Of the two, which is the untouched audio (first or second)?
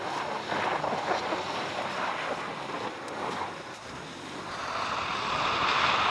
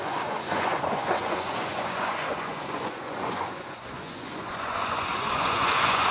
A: first